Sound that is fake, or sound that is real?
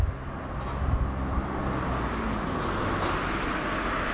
real